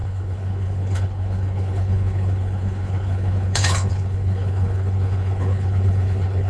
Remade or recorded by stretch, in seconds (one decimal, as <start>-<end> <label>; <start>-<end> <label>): 0.0-6.5 remade

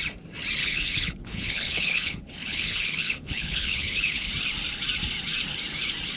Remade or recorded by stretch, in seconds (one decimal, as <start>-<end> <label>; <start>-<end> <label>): 0.0-0.6 recorded; 0.6-4.3 remade; 4.3-6.2 recorded

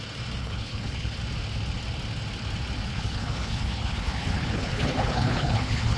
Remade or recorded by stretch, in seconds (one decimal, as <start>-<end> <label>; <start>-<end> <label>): 0.0-0.4 recorded; 0.4-1.2 remade; 1.2-2.9 recorded; 2.9-6.0 remade

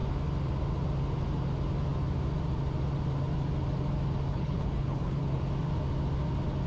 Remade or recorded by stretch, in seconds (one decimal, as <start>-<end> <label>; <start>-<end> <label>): 0.0-4.3 recorded; 4.3-5.4 remade; 5.4-6.7 recorded

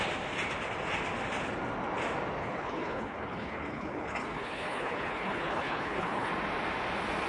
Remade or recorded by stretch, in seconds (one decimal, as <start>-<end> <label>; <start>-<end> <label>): 0.0-2.4 recorded; 2.4-6.3 remade; 6.3-7.3 recorded